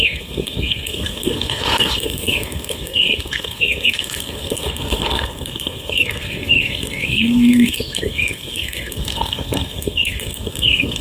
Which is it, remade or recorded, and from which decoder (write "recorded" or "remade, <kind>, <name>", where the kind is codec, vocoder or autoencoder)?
remade, codec, SNAC